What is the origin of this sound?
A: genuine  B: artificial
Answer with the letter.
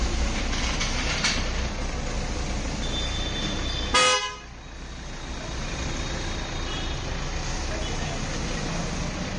A